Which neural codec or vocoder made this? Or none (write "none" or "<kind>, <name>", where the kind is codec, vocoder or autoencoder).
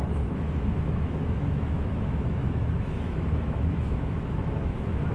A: autoencoder, DAC-VAE